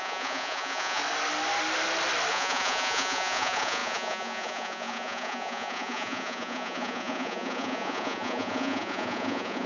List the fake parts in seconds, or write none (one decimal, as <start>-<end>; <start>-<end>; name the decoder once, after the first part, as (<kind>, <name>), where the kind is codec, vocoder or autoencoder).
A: 0.0-1.0 (vocoder, Vocos); 2.3-9.7